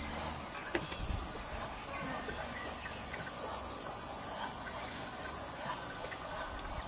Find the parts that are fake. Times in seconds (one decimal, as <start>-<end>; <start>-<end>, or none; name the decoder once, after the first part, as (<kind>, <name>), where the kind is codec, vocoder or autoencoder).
0.6-1.1 (vocoder, Vocos); 2.4-6.3